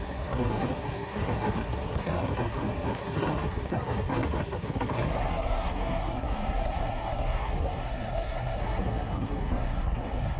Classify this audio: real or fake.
fake